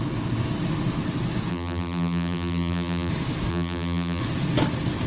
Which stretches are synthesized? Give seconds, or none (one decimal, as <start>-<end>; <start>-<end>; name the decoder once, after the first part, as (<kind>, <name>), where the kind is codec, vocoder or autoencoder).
1.5-3.1 (vocoder, BigVGAN v2); 3.5-4.2